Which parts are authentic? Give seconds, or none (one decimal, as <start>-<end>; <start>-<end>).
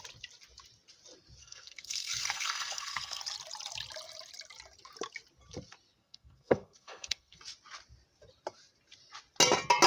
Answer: 0.0-1.4; 3.2-6.0; 7.4-9.9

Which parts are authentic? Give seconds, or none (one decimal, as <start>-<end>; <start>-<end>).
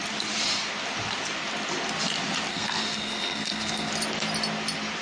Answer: 0.0-2.5; 3.9-5.0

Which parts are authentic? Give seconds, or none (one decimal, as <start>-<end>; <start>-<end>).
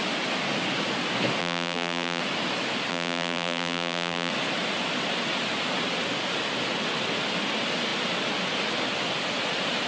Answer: 0.0-1.4; 2.2-2.9; 4.3-9.9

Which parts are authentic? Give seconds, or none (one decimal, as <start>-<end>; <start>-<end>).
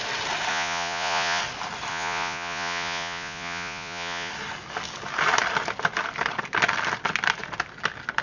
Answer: 0.0-0.5; 1.4-1.9; 4.3-8.2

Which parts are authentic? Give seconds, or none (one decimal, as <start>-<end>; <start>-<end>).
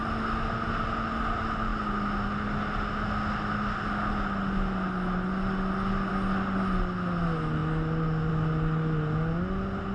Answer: 0.0-9.9